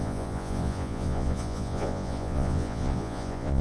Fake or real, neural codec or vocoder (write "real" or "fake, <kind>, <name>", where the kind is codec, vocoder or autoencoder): fake, vocoder, Vocos